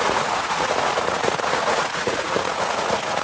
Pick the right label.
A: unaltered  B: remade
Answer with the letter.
B